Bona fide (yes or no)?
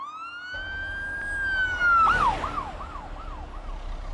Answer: yes